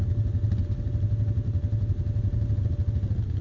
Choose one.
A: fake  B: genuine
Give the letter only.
B